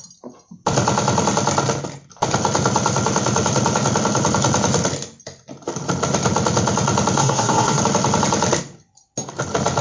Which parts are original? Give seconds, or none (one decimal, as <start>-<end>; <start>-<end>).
0.0-7.2; 7.8-9.8